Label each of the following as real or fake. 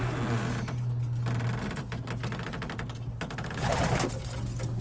real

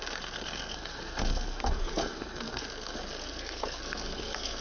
fake